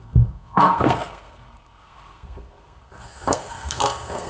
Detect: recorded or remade remade